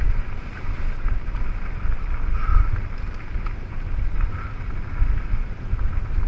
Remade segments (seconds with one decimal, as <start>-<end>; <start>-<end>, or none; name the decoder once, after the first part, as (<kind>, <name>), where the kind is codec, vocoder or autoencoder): none